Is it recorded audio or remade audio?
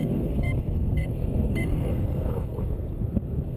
remade